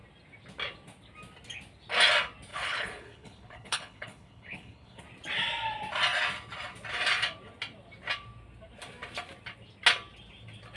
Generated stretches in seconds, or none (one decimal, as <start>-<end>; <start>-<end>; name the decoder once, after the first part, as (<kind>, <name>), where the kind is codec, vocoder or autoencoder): 2.5-5.0 (codec, HILCodec)